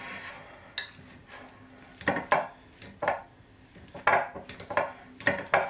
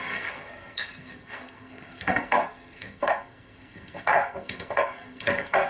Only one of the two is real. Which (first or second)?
first